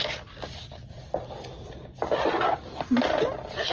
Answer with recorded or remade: recorded